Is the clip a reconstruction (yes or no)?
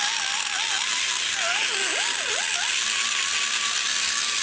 no